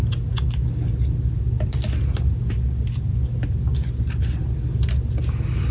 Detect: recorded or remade recorded